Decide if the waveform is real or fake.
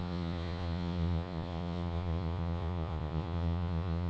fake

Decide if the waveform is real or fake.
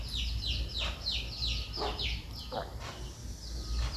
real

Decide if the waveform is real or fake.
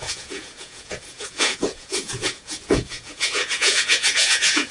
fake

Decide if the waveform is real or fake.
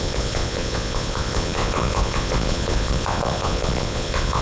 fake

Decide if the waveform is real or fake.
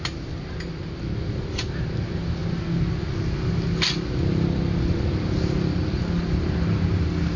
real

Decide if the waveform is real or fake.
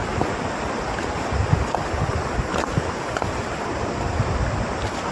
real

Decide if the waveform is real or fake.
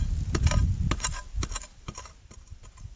real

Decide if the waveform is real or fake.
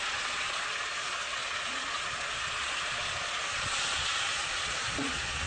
fake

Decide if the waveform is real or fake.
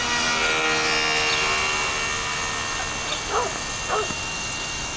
real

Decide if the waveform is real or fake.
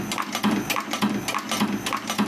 real